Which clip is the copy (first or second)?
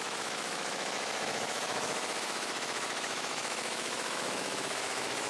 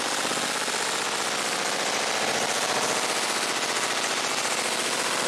first